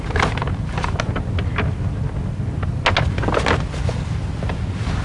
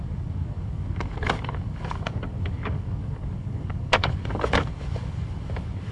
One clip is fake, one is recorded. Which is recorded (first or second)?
first